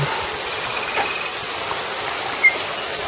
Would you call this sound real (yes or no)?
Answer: yes